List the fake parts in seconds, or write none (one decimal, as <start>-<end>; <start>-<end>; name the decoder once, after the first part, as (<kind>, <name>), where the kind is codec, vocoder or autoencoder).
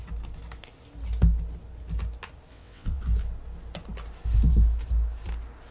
2.5-3.0 (vocoder, WaveNeXt)